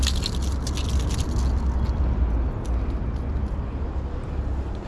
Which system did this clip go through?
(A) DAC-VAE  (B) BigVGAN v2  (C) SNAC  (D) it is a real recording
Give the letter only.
D